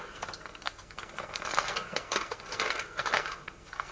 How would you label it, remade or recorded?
remade